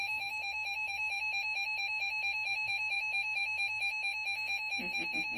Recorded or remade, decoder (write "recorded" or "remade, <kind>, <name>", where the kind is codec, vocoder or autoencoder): remade, vocoder, BigVGAN v2